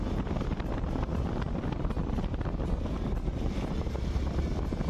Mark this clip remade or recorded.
recorded